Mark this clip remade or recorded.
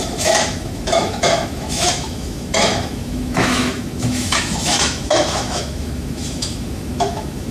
remade